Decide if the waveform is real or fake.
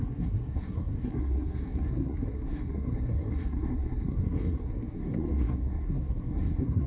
fake